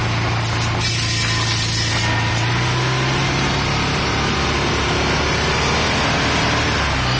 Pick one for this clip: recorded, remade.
recorded